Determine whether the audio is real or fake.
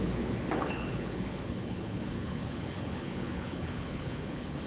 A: fake